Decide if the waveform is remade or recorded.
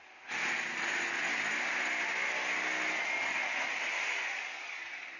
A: recorded